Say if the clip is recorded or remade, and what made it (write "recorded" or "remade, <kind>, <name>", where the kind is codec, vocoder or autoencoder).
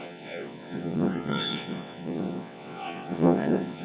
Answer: remade, vocoder, WaveNeXt